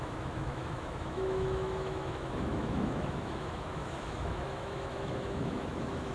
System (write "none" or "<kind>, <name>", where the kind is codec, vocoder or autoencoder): autoencoder, DAC-VAE